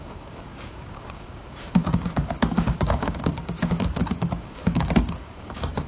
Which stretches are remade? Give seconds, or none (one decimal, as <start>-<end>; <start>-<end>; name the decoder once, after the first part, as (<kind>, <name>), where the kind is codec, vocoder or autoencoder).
0.0-5.9 (codec, DAC)